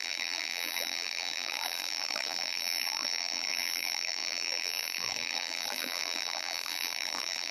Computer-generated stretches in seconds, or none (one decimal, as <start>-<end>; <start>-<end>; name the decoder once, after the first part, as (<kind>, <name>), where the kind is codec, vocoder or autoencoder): 0.0-7.5 (vocoder, BigVGAN v2)